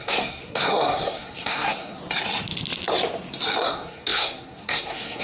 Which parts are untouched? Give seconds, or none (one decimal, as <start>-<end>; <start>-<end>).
2.0-3.6